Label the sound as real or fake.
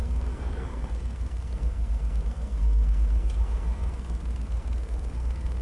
fake